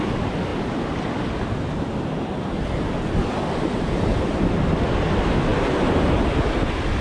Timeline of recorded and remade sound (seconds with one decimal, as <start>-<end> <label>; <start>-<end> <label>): 0.0-7.0 recorded

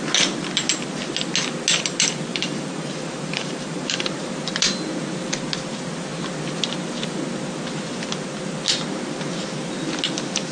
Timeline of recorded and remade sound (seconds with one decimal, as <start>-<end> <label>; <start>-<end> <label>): 0.0-2.3 recorded; 2.3-4.3 remade; 4.3-10.5 recorded

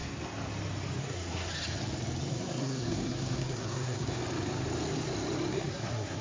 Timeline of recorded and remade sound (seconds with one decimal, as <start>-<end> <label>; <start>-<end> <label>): 0.0-1.0 recorded; 1.0-1.5 remade; 1.5-2.3 recorded; 2.3-4.2 remade; 4.2-5.5 recorded; 5.5-6.2 remade

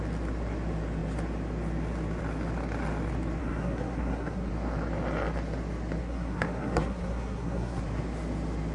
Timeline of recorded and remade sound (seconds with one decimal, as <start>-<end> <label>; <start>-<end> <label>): 0.0-3.4 recorded; 3.4-4.5 remade; 4.5-6.0 recorded; 6.0-7.8 remade; 7.8-8.7 recorded

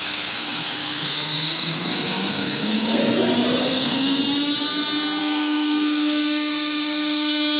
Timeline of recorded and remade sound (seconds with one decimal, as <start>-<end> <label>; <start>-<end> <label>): 0.0-3.0 remade; 3.0-3.6 recorded; 3.6-4.2 remade; 4.2-5.2 recorded; 5.2-7.6 remade